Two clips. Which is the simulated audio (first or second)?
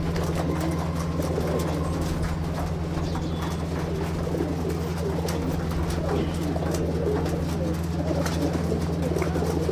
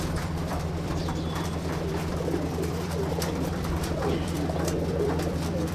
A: second